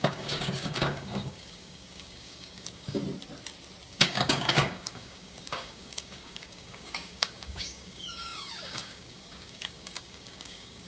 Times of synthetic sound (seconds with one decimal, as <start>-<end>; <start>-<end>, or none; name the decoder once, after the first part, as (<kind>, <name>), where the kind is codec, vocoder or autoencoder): 0.0-3.0 (codec, DAC); 3.9-10.9